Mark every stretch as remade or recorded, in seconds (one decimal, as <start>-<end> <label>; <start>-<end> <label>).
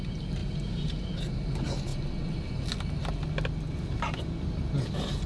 0.0-5.3 recorded